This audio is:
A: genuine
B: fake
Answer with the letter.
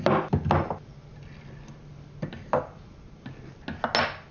A